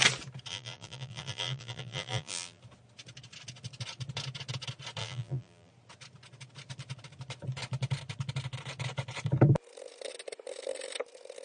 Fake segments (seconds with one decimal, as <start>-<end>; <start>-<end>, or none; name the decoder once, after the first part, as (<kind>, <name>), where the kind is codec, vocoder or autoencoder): 0.5-2.6 (vocoder, BigVGAN v2); 5.0-5.7